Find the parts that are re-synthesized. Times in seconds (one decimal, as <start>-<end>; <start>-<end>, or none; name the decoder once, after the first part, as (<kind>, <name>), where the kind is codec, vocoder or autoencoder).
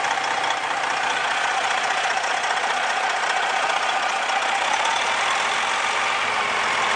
1.2-5.2 (vocoder, Vocos)